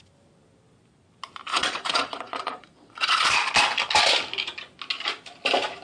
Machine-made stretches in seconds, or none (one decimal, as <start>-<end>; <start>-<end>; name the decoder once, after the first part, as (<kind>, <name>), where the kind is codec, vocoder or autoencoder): 1.5-3.5 (vocoder, Vocos)